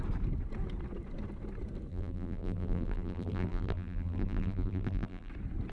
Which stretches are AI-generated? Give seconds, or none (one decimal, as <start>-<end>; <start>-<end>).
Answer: 1.9-5.3